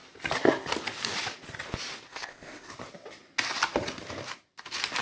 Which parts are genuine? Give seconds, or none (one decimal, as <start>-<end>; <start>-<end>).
0.0-2.1; 2.7-5.0